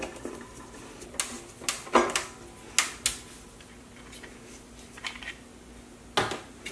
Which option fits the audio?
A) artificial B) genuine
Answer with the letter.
B